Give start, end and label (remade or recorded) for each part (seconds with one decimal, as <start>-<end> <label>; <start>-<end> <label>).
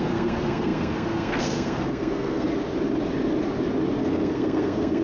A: 0.0-2.5 remade; 2.5-4.0 recorded; 4.0-5.0 remade